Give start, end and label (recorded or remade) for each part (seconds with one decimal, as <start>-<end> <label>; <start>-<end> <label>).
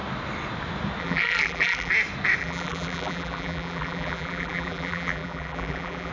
0.0-1.0 recorded; 1.0-1.9 remade; 1.9-2.4 recorded; 2.4-6.1 remade